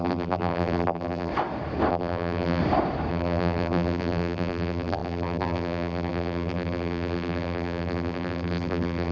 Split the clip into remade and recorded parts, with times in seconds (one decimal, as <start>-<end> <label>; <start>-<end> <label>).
0.0-1.3 remade; 1.3-1.9 recorded; 1.9-2.6 remade; 2.6-3.1 recorded; 3.1-9.1 remade